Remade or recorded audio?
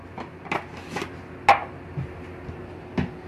recorded